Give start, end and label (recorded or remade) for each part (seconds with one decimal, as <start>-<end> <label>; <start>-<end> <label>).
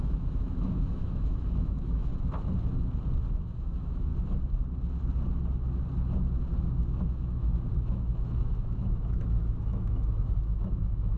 0.0-2.1 remade; 2.1-3.3 recorded; 3.3-4.1 remade; 4.1-6.6 recorded; 6.6-11.2 remade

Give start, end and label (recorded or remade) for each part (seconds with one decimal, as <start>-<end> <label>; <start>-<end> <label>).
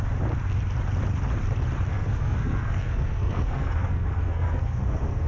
0.0-1.9 recorded; 1.9-5.3 remade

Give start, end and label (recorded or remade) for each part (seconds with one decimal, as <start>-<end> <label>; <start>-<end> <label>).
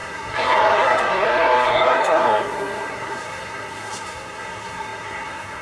0.0-5.6 remade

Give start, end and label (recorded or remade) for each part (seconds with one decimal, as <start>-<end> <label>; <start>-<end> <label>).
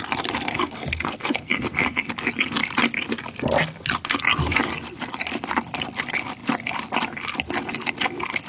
0.0-0.5 recorded; 0.5-2.1 remade; 2.1-8.5 recorded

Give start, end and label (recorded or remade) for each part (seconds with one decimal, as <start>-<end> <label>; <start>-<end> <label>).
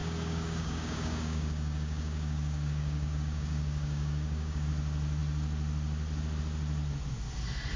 0.0-4.7 remade; 4.7-7.8 recorded